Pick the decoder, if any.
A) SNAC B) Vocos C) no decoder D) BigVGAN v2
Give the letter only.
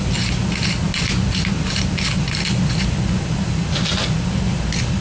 C